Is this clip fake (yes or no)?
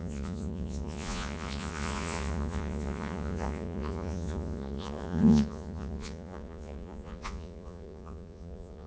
yes